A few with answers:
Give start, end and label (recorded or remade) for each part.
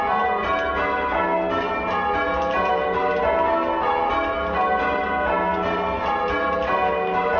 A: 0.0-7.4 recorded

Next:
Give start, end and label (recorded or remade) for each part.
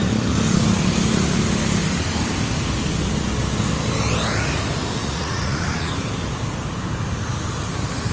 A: 0.0-5.0 recorded; 5.0-5.9 remade; 5.9-8.1 recorded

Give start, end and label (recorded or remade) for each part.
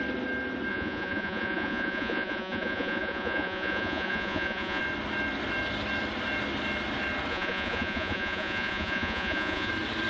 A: 0.0-0.7 recorded; 0.7-4.8 remade; 4.8-7.3 recorded; 7.3-9.7 remade; 9.7-10.1 recorded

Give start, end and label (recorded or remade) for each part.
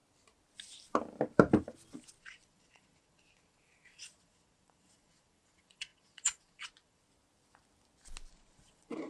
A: 0.0-2.2 recorded; 2.2-7.0 remade; 7.0-8.3 recorded; 8.3-9.1 remade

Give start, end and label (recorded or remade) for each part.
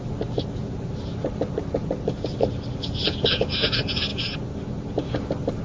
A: 0.0-5.6 recorded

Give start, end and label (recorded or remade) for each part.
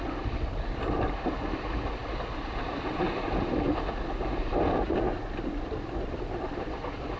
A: 0.0-7.2 recorded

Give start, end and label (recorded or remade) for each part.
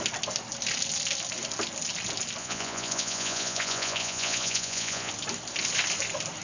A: 0.0-2.4 recorded; 2.4-5.1 remade; 5.1-6.4 recorded